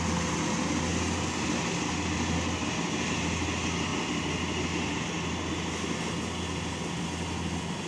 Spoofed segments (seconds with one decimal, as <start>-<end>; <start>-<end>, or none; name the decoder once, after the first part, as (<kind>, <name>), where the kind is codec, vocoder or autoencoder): none